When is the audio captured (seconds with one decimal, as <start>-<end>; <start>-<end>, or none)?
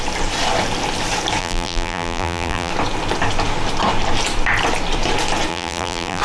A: 0.0-1.4; 2.7-5.5